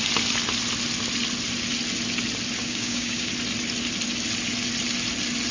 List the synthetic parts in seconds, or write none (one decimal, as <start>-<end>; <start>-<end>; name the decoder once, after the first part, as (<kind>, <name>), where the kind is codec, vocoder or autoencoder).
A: 2.6-3.3 (codec, DAC)